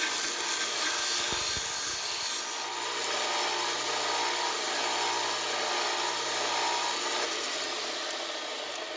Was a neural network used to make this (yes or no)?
no